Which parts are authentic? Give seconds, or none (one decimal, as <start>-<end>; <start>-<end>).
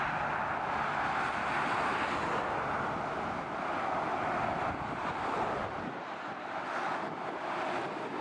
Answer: 0.0-8.2